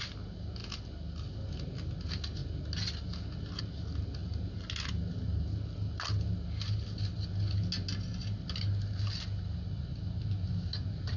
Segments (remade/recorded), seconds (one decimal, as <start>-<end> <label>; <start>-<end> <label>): 0.0-11.2 recorded